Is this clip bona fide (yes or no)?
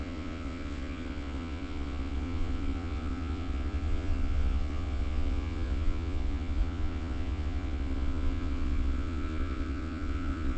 no